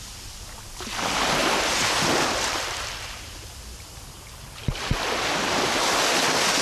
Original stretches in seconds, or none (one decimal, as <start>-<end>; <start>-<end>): 0.0-1.4; 3.5-6.6